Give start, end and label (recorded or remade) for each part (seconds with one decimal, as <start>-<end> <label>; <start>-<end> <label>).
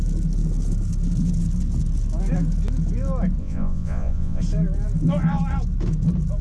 0.0-3.4 recorded; 3.4-4.4 remade; 4.4-6.4 recorded